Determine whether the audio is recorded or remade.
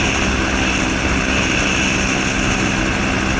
recorded